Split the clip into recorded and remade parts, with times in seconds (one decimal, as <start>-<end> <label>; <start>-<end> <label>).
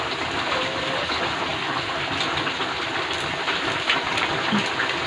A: 0.0-5.1 recorded